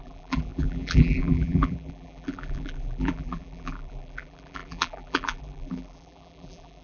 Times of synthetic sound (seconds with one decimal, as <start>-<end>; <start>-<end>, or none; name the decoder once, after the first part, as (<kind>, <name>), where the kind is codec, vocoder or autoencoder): 0.0-6.8 (vocoder, BigVGAN v2)